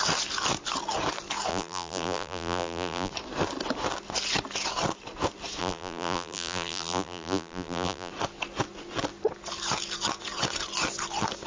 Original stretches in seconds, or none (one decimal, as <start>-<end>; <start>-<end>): 0.0-1.5; 3.1-5.6; 8.1-11.5